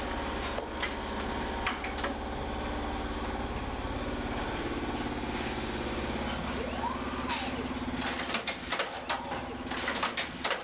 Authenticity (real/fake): real